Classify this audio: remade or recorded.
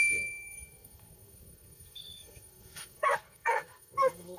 remade